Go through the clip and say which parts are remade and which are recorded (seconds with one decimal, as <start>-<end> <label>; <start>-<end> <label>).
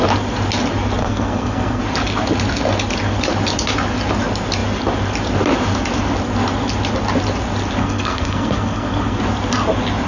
0.0-1.0 recorded; 1.0-1.8 remade; 1.8-7.8 recorded; 7.8-9.2 remade; 9.2-10.1 recorded